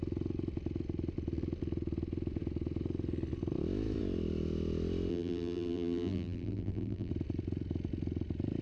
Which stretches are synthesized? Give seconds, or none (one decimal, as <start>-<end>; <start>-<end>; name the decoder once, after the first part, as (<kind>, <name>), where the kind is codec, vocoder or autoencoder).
5.1-7.1 (vocoder, BigVGAN v2)